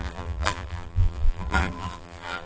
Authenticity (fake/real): fake